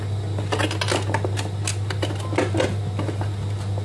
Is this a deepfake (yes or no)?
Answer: no